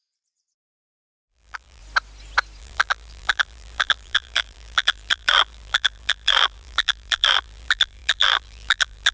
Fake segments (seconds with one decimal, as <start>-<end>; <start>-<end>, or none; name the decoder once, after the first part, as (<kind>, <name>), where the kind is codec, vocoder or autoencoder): 0.0-1.8 (vocoder, BigVGAN v2); 2.6-9.1